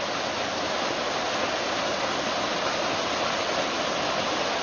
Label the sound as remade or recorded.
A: recorded